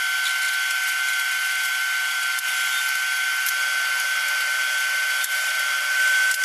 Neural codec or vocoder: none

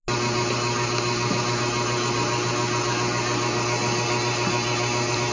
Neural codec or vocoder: none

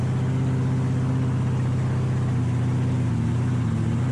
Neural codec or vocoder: none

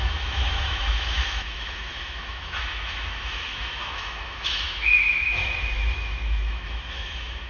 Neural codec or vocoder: autoencoder, DAC-VAE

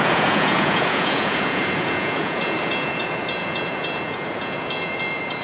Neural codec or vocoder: vocoder, Vocos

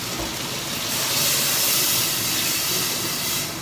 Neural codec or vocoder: none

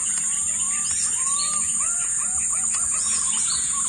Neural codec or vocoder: vocoder, BigVGAN v2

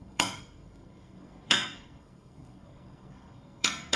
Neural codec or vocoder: codec, SNAC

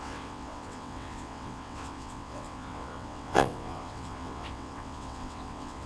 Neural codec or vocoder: vocoder, WaveNeXt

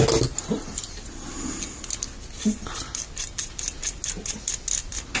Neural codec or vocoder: none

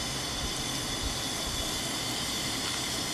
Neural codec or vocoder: none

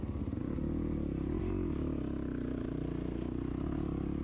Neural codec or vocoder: none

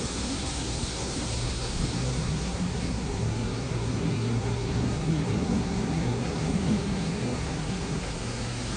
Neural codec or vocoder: codec, SNAC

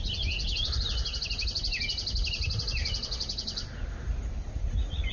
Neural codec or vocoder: none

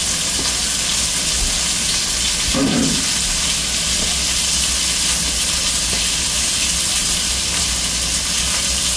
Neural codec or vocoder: none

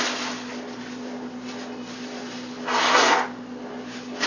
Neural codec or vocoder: none